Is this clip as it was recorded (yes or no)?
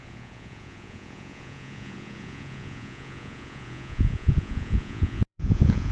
no